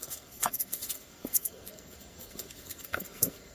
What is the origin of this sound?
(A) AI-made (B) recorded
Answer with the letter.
A